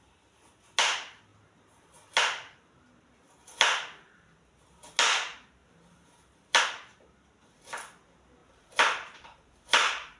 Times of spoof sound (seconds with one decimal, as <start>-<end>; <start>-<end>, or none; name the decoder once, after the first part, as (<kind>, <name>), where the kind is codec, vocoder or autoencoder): 5.6-6.6 (vocoder, BigVGAN v2); 8.4-10.2

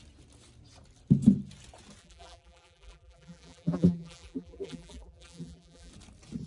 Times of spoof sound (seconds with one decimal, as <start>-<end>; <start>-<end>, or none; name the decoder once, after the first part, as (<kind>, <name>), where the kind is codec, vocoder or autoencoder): 2.0-5.9 (vocoder, BigVGAN v2)

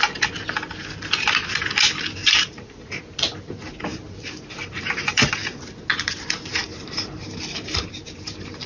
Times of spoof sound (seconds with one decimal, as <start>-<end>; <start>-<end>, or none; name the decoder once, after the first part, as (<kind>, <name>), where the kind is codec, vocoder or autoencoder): 2.2-3.0 (vocoder, BigVGAN v2); 3.9-5.6; 6.6-7.9